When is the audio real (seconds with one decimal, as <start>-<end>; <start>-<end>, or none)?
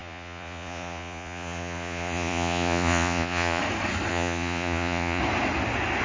3.6-4.1; 5.2-6.0